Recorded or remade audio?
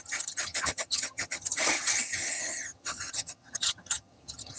remade